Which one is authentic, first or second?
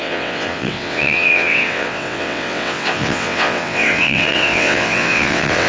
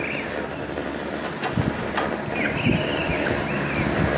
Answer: second